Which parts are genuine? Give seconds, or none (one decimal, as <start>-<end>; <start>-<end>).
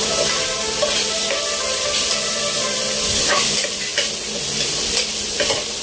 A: 0.0-5.8